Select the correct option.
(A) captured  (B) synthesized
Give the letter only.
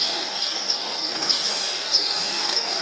B